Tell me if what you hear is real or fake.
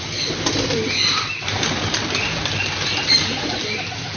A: real